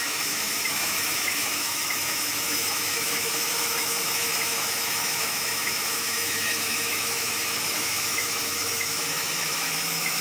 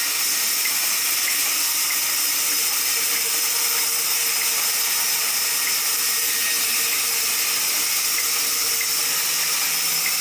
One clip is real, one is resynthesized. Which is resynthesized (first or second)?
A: first